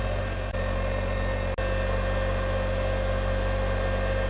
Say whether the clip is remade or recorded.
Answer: recorded